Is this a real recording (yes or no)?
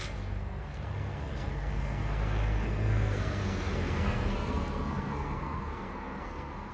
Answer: no